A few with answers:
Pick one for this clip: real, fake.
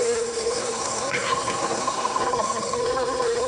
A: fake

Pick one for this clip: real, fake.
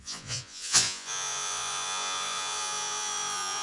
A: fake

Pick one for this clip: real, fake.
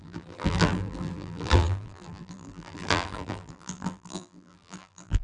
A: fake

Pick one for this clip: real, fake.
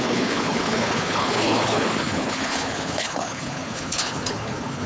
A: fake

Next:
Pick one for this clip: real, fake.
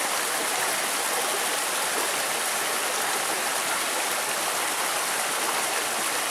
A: real